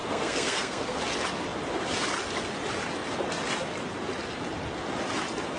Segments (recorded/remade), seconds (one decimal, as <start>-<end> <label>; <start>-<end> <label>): 0.0-1.0 remade; 1.0-5.6 recorded